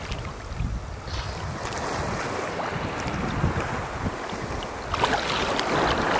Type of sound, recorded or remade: recorded